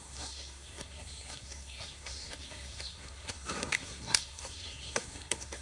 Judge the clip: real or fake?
fake